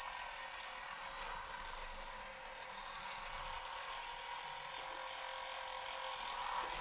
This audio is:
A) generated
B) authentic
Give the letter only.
B